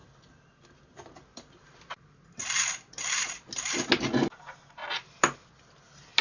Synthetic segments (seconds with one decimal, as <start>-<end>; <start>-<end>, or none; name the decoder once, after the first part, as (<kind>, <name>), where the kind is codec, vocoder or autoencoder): none